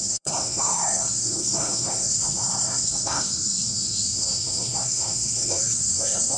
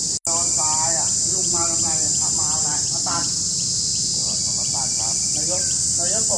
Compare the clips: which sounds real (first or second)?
second